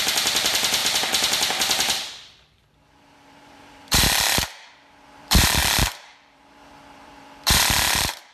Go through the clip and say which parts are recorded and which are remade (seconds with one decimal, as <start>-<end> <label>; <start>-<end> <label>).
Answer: 0.0-8.3 remade